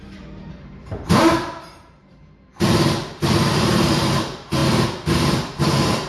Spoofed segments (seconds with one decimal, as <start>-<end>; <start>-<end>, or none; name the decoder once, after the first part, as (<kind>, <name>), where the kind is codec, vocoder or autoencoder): 0.0-2.5 (vocoder, BigVGAN v2); 3.4-4.6; 5.1-6.1